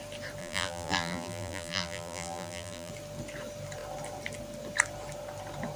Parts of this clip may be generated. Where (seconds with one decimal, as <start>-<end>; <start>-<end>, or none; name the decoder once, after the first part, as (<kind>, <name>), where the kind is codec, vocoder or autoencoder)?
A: 0.4-2.9 (vocoder, BigVGAN v2)